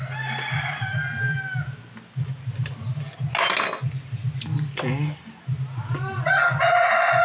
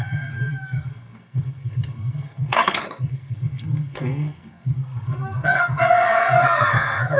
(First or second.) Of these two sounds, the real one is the first